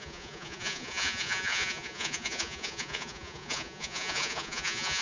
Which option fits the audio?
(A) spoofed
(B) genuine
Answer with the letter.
A